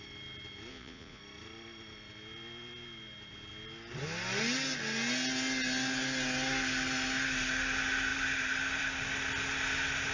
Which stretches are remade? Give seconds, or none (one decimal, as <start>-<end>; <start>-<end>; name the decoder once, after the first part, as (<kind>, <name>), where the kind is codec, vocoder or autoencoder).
0.7-1.2 (vocoder, Vocos)